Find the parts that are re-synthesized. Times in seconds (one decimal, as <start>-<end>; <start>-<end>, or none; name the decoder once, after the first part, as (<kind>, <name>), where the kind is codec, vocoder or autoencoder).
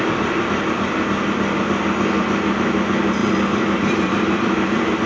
3.2-5.1 (vocoder, BigVGAN v2)